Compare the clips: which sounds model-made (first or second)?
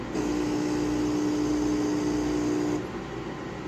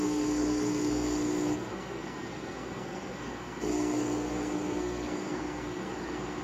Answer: second